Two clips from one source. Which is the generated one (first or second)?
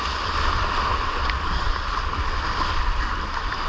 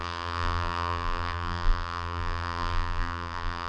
second